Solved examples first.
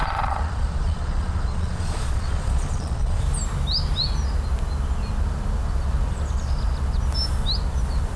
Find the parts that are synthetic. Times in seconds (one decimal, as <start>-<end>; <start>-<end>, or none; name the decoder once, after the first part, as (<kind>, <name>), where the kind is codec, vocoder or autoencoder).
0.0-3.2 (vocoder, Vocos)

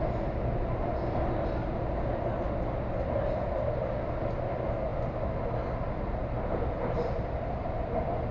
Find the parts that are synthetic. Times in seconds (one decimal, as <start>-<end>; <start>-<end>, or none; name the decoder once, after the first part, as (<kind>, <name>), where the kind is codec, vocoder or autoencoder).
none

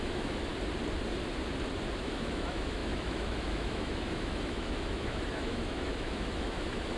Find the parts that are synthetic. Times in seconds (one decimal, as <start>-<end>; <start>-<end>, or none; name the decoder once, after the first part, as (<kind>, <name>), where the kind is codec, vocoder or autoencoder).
0.0-0.5 (autoencoder, DAC-VAE); 2.0-7.0